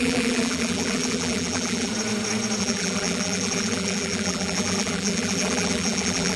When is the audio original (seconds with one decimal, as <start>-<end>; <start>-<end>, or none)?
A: 1.9-2.6